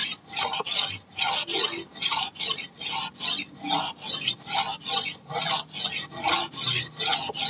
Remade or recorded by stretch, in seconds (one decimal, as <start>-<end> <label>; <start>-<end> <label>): 0.0-7.5 recorded